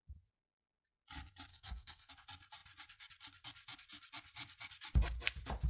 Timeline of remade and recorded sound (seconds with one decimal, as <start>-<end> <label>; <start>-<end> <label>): 0.0-1.5 recorded; 1.5-2.1 remade; 2.1-5.7 recorded